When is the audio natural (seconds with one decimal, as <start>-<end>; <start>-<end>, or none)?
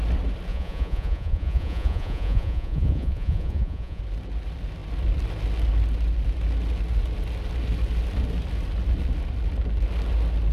0.0-0.5; 4.0-10.5